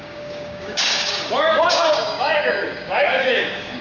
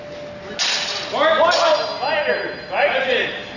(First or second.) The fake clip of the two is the first